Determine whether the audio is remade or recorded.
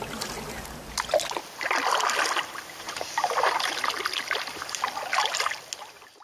recorded